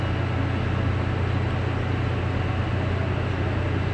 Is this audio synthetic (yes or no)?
no